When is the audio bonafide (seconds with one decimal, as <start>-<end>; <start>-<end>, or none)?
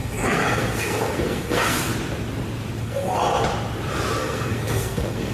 1.9-2.8; 3.2-4.2